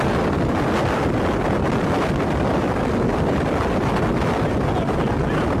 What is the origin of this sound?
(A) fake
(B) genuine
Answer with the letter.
B